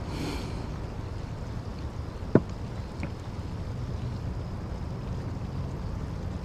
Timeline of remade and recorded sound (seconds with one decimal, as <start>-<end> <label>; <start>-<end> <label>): 0.0-6.4 recorded